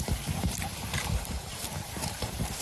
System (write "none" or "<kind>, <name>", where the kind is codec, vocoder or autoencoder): vocoder, BigVGAN v2